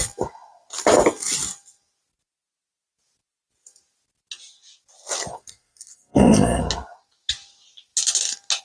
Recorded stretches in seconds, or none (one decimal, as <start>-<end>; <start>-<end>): 0.0-5.4; 6.6-8.6